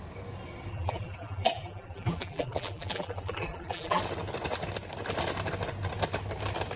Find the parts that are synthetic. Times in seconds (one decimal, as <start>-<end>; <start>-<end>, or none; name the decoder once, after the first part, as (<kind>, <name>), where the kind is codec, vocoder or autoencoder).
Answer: 0.7-4.0 (vocoder, BigVGAN v2)